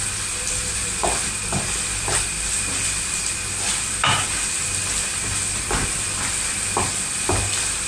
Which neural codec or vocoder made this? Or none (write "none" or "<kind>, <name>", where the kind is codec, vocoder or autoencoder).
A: none